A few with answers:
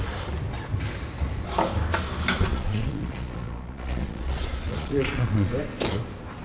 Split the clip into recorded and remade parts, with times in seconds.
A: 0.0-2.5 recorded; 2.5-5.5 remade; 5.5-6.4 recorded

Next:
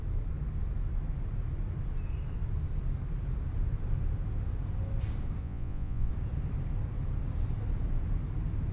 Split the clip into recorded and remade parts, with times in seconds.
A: 0.0-5.4 recorded; 5.4-6.1 remade; 6.1-8.7 recorded

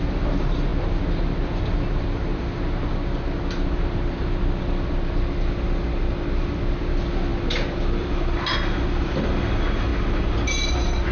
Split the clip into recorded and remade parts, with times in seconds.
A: 0.0-11.1 recorded

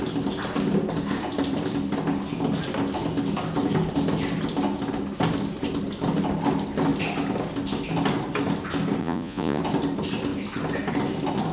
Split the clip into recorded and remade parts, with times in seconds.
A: 0.0-9.0 recorded; 9.0-9.6 remade; 9.6-11.5 recorded

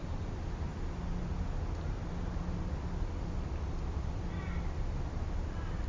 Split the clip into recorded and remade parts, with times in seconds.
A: 0.0-5.9 recorded

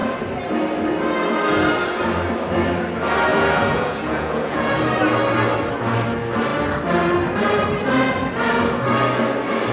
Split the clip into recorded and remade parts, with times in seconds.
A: 0.0-3.3 recorded; 3.3-4.8 remade; 4.8-9.7 recorded

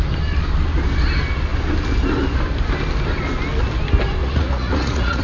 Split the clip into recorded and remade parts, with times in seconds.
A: 0.0-4.2 recorded; 4.2-5.2 remade

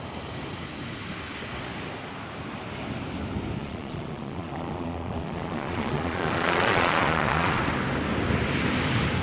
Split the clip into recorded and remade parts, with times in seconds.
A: 0.0-3.6 recorded; 3.6-7.6 remade; 7.6-9.2 recorded